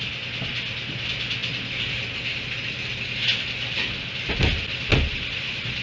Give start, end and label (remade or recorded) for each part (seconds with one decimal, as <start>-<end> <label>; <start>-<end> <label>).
0.0-5.8 recorded